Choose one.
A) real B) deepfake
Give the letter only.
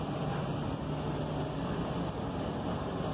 A